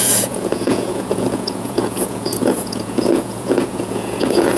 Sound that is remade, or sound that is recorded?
remade